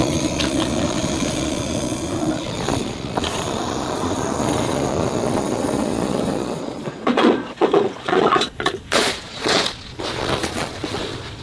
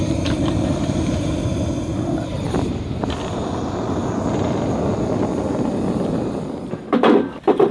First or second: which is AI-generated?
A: first